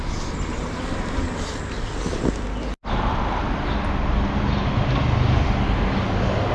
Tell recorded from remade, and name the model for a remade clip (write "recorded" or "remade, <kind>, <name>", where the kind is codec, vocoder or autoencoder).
recorded